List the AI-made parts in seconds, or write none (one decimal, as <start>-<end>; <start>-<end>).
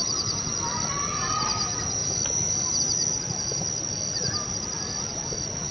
none